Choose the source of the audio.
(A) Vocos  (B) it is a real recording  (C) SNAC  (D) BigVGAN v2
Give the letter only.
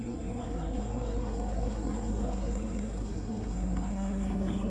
C